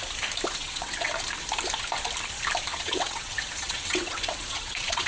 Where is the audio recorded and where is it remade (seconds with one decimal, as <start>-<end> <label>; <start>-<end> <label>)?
0.0-0.6 recorded; 0.6-1.1 remade; 1.1-2.7 recorded; 2.7-5.1 remade